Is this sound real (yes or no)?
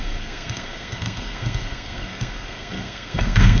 no